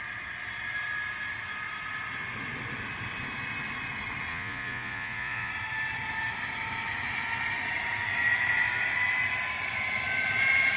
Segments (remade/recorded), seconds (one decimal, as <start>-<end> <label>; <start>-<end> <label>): 0.0-4.3 recorded; 4.3-5.5 remade; 5.5-10.8 recorded